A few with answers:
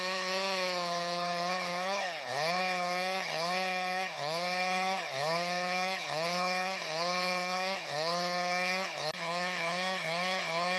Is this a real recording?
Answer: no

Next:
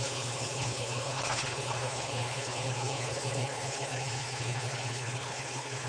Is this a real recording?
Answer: no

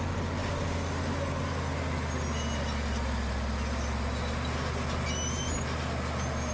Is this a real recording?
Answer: yes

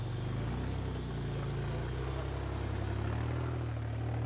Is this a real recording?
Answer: yes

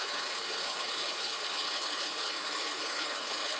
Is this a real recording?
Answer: no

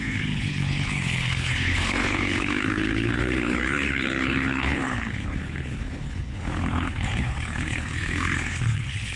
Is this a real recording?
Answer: no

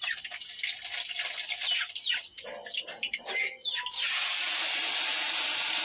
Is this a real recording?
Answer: yes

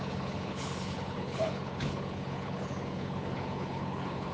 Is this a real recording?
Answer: no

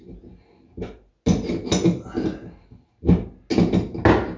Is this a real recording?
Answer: yes